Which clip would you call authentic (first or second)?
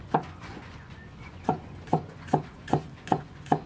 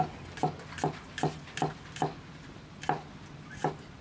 second